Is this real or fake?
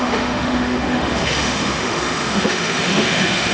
fake